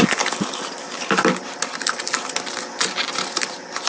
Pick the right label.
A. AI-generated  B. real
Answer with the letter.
B